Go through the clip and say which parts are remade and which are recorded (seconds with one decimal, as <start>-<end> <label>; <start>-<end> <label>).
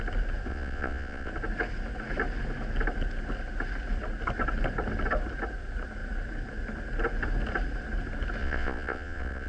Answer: 0.0-0.5 recorded; 0.5-1.3 remade; 1.3-8.4 recorded; 8.4-9.5 remade